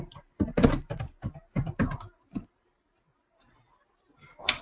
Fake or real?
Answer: real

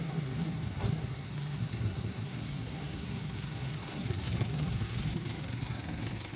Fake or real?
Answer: fake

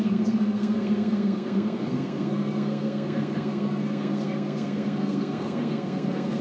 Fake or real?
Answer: fake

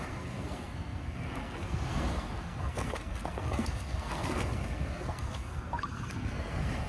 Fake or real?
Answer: fake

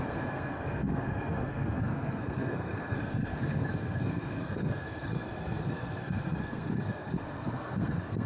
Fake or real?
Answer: fake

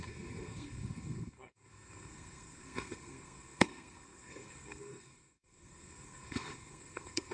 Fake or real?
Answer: fake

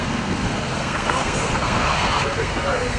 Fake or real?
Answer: fake